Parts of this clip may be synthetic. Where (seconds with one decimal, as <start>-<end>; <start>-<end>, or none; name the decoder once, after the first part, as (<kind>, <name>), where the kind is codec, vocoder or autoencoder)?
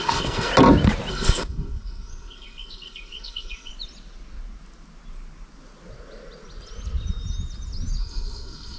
0.0-0.5 (codec, SNAC); 1.1-3.7; 8.0-8.8